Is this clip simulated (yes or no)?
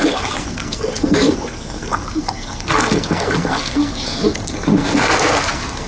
yes